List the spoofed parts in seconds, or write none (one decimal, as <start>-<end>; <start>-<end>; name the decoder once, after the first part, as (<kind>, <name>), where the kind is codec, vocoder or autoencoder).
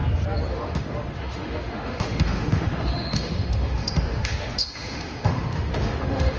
0.5-6.4 (autoencoder, DAC-VAE)